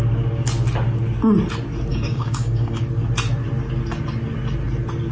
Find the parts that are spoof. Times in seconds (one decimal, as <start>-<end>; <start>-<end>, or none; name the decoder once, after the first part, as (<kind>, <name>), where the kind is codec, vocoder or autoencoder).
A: 1.9-2.8 (codec, DAC)